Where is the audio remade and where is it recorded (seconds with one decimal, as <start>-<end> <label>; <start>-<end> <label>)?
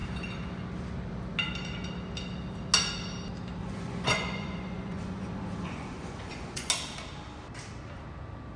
0.0-3.6 recorded; 3.6-6.7 remade; 6.7-8.6 recorded